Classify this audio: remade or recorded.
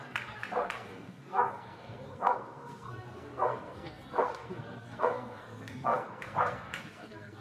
remade